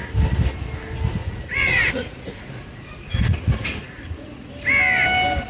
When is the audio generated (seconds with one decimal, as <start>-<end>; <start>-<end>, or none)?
1.2-4.5